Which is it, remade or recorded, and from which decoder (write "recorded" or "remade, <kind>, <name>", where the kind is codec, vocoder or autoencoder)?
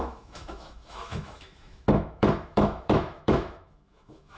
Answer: remade, autoencoder, DAC-VAE